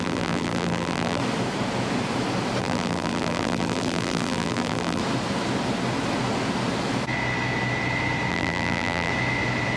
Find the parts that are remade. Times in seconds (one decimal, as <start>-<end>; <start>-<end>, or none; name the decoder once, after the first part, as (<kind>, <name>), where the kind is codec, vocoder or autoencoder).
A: 0.0-1.2 (vocoder, BigVGAN v2); 2.6-5.0; 8.3-9.1